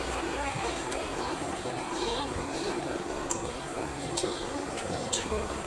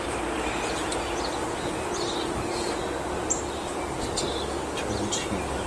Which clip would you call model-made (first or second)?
first